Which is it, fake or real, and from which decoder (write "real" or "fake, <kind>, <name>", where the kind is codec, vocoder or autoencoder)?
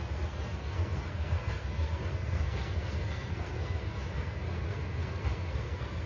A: fake, codec, SNAC